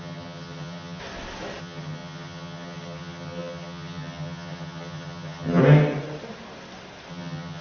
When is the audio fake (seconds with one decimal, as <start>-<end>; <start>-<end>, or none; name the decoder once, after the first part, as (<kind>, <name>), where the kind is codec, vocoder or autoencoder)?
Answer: 0.0-1.0 (vocoder, HiFi-GAN); 1.6-5.6; 7.1-7.6